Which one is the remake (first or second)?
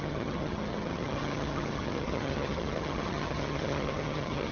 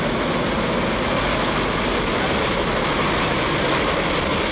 first